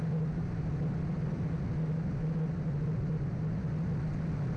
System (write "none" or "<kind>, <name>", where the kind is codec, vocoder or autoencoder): none